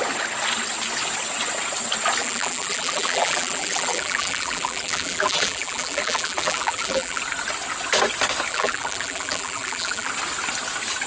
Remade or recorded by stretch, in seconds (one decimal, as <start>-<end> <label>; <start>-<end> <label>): 0.0-2.2 recorded; 2.2-7.2 remade; 7.2-8.5 recorded; 8.5-10.1 remade; 10.1-11.1 recorded